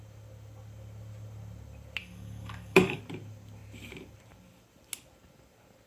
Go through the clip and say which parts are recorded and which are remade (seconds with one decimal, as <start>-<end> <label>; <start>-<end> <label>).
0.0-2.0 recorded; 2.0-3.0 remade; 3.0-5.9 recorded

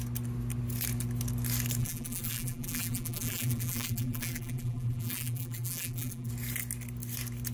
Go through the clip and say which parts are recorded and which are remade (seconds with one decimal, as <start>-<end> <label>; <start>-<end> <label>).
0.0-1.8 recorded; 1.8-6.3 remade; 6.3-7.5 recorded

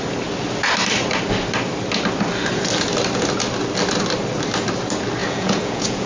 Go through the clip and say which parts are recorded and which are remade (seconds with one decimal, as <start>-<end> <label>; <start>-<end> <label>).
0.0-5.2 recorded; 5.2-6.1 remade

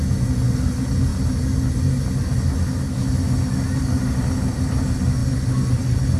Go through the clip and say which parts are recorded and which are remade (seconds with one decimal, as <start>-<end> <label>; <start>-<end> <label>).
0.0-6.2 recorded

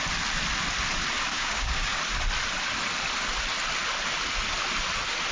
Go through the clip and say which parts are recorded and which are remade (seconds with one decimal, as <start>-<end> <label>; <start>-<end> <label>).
0.0-1.3 recorded; 1.3-2.0 remade; 2.0-5.3 recorded

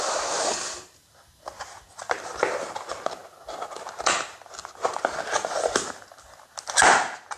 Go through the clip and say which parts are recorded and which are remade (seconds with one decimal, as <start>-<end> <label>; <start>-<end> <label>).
0.0-7.4 recorded

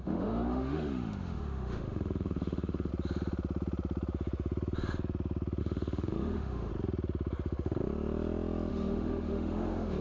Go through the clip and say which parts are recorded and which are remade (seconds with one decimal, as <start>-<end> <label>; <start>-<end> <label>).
0.0-2.9 remade; 2.9-5.6 recorded; 5.6-6.7 remade; 6.7-8.7 recorded; 8.7-10.0 remade